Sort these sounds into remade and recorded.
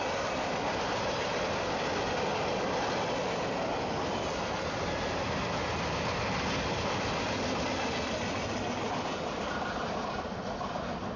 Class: recorded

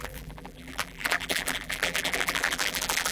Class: remade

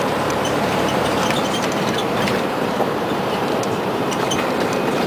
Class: remade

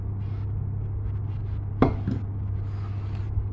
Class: recorded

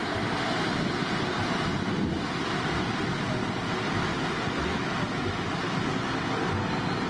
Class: recorded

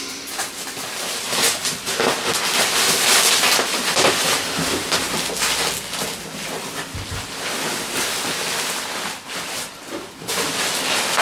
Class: recorded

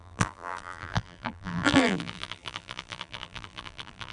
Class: remade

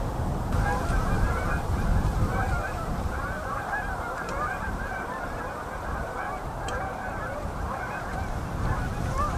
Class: remade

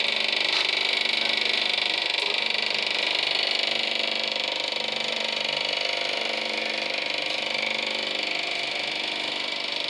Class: recorded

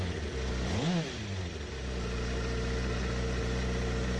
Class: recorded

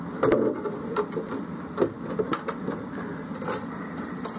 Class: recorded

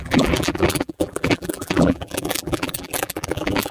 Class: remade